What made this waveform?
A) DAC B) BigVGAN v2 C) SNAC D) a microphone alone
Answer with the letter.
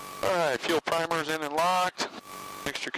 D